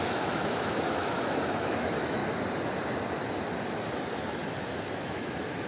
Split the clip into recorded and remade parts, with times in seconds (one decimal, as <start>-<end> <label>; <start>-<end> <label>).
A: 0.0-2.2 remade; 2.2-5.0 recorded; 5.0-5.7 remade